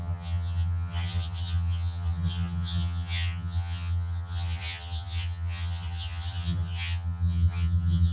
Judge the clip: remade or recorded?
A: remade